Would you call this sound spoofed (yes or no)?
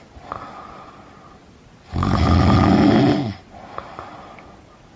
no